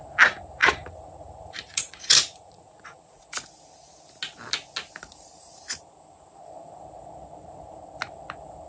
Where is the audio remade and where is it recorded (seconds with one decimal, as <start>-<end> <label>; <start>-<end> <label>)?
0.0-0.6 recorded; 0.6-3.2 remade; 3.2-8.7 recorded